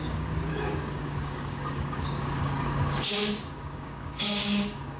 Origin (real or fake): fake